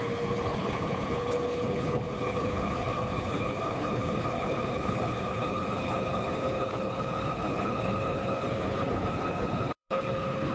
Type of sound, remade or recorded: remade